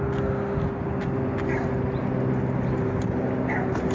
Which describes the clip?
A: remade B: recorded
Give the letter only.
B